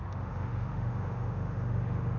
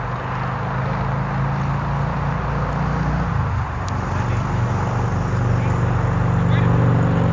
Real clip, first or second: second